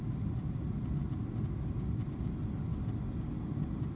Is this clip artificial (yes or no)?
no